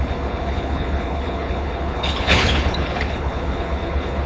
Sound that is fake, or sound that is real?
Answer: fake